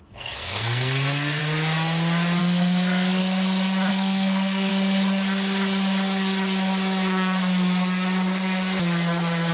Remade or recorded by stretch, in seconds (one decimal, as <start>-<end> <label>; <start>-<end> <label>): 0.0-1.4 remade; 1.4-2.4 recorded; 2.4-3.2 remade; 3.2-3.9 recorded; 3.9-4.7 remade; 4.7-9.5 recorded